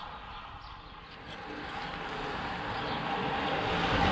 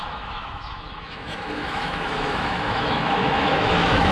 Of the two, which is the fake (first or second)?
second